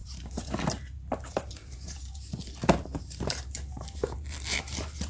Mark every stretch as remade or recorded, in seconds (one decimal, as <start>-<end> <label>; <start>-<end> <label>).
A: 0.0-0.5 remade; 0.5-1.6 recorded; 1.6-5.1 remade